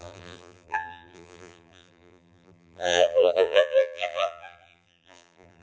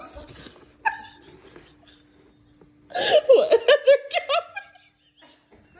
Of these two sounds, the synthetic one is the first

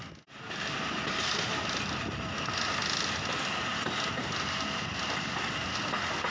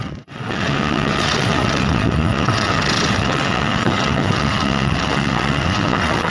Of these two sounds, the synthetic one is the second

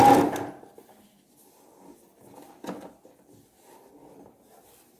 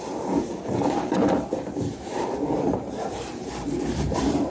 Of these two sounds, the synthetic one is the second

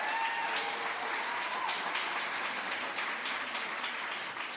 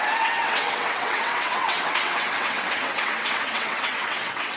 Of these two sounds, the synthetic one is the second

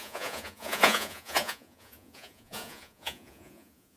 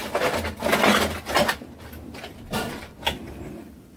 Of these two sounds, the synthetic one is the first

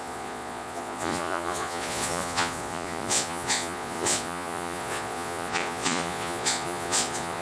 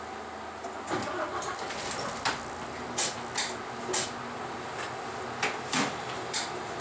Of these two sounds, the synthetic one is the first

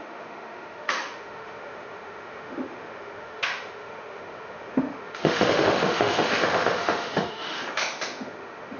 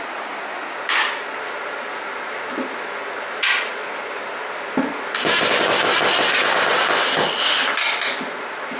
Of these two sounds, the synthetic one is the first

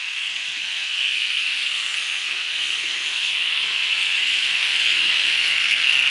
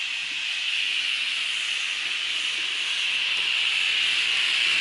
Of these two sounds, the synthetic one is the first